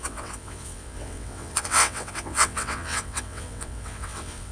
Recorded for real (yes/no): no